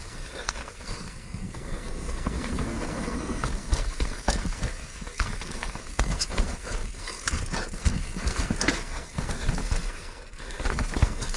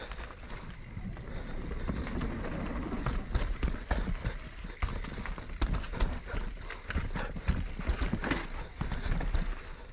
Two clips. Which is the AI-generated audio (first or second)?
first